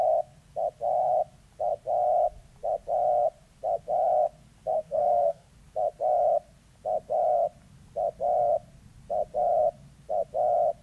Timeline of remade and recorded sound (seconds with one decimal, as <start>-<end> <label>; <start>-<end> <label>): 0.0-4.7 recorded; 4.7-5.5 remade; 5.5-10.8 recorded